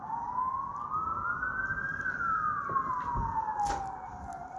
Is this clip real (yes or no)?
yes